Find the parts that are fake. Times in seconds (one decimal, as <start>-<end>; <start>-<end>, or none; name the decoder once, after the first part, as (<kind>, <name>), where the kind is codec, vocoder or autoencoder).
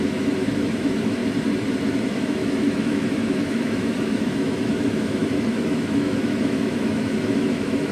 0.0-1.2 (autoencoder, DAC-VAE); 1.8-7.9